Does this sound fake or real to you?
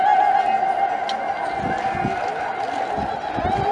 real